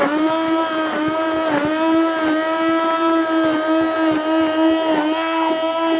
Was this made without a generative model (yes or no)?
yes